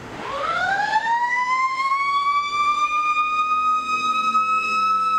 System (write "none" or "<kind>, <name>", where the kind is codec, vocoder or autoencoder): autoencoder, DAC-VAE